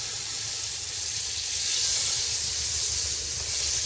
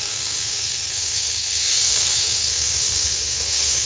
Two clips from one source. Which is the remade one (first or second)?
second